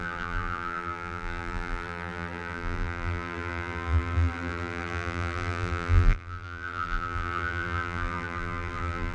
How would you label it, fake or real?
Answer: fake